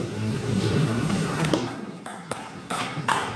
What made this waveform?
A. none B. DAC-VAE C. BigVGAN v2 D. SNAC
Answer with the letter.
D